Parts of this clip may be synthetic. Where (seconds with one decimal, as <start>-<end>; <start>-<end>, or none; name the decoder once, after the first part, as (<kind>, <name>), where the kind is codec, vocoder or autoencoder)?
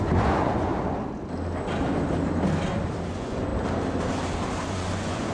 0.0-0.7 (vocoder, Vocos); 3.1-3.5; 4.7-5.3